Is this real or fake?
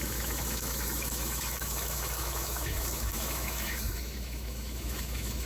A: fake